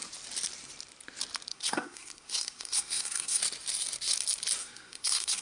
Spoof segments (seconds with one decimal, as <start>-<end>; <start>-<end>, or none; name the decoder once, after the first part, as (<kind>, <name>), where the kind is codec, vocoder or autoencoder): 1.5-3.4 (codec, SNAC); 4.6-5.4